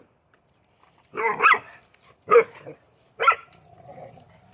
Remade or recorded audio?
remade